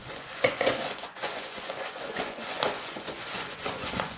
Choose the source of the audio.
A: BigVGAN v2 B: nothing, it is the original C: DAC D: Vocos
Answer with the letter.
D